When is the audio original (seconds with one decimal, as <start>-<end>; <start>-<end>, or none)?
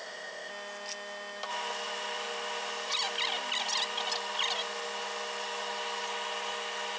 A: 0.5-7.0